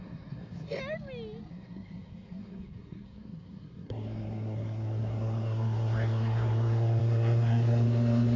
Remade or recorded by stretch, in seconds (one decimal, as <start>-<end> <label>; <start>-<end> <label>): 0.0-0.8 remade; 0.8-1.5 recorded; 1.5-8.4 remade